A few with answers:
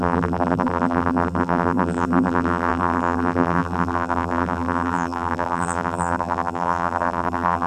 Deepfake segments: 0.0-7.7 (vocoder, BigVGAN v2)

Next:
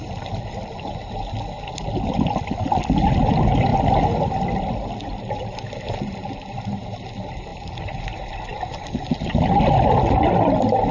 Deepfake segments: 3.7-5.3 (vocoder, BigVGAN v2); 7.5-8.0

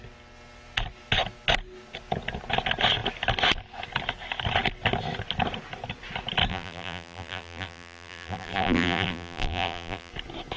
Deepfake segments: 6.5-10.1 (vocoder, BigVGAN v2)

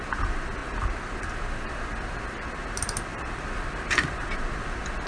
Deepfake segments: 0.6-2.5 (vocoder, BigVGAN v2); 3.1-4.4

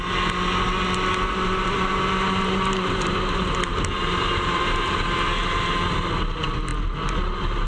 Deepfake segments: 1.3-5.0 (vocoder, BigVGAN v2)

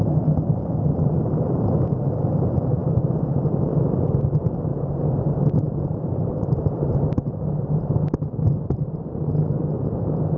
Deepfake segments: 4.7-7.9 (vocoder, BigVGAN v2)